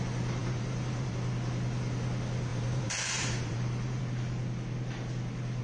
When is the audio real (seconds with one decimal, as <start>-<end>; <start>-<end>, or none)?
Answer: 0.0-0.4; 1.1-2.5; 4.0-5.6